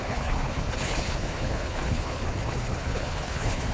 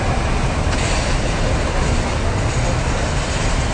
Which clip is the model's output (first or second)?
first